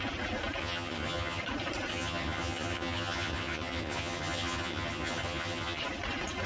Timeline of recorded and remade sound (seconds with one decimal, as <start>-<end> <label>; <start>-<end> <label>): 0.0-0.6 recorded; 0.6-1.4 remade; 1.4-1.9 recorded; 1.9-5.8 remade; 5.8-6.5 recorded